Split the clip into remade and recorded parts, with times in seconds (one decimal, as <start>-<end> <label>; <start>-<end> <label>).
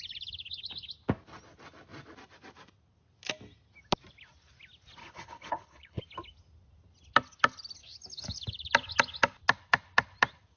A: 0.0-5.0 recorded; 5.0-6.0 remade; 6.0-10.6 recorded